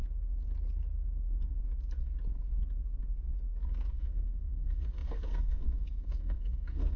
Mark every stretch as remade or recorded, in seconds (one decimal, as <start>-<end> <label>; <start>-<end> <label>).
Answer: 0.0-3.9 recorded; 3.9-7.0 remade